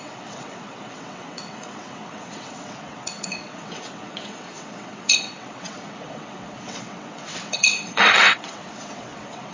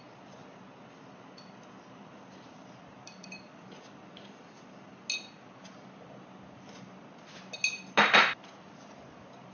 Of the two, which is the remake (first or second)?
first